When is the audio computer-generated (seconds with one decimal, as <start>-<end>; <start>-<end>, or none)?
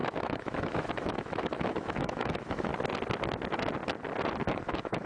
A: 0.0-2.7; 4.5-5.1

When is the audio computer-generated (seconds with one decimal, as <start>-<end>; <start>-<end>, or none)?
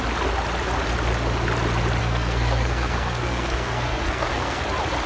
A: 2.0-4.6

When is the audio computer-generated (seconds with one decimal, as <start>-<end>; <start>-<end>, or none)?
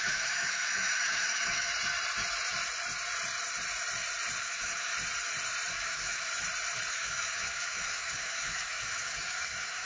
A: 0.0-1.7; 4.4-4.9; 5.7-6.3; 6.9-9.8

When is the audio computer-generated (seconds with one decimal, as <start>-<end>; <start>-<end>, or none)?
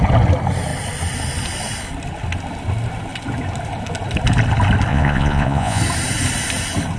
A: 4.9-5.8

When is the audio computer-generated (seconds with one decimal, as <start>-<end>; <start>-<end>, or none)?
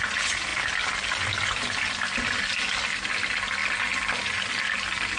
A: none